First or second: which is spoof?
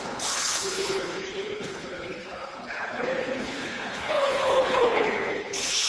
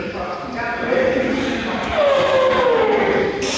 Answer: first